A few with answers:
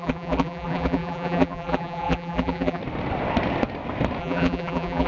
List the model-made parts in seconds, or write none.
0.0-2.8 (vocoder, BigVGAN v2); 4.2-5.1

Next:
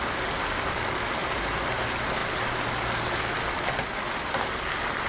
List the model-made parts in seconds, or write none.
1.2-1.7 (vocoder, BigVGAN v2)

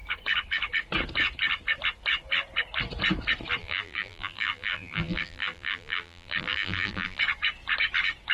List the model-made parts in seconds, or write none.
3.6-7.2 (vocoder, BigVGAN v2)

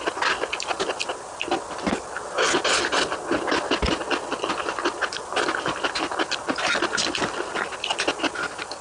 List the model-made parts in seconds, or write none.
1.0-2.6 (vocoder, BigVGAN v2); 4.9-7.5